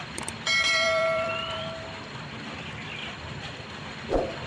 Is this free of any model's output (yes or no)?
no